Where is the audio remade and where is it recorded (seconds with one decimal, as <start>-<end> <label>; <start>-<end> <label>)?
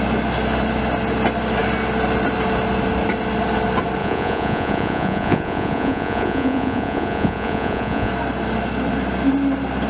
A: 0.0-4.0 recorded; 4.0-8.1 remade; 8.1-9.9 recorded